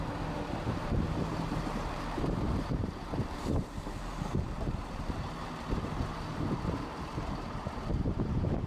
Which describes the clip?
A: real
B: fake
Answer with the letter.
B